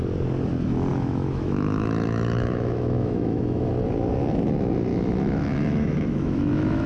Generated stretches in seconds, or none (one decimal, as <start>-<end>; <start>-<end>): 0.9-3.7; 4.9-6.9